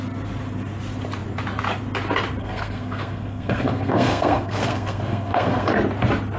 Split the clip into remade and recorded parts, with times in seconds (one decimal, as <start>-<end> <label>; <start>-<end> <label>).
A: 0.0-2.4 recorded; 2.4-5.7 remade; 5.7-6.4 recorded